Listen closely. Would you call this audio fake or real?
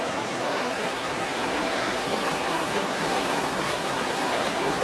fake